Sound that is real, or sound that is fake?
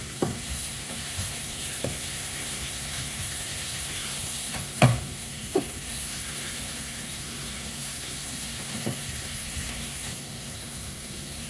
fake